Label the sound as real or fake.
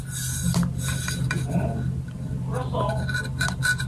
real